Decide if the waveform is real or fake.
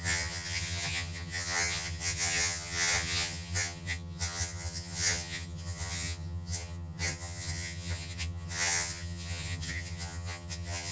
fake